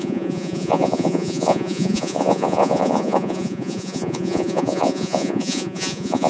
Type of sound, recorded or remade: remade